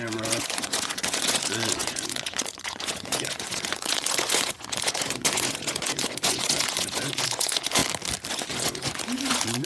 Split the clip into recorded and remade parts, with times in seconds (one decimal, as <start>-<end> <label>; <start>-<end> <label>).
0.0-7.8 remade; 7.8-8.3 recorded; 8.3-9.7 remade